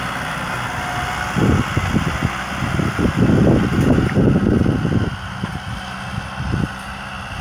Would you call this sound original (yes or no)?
yes